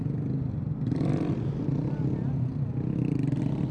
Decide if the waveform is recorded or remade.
recorded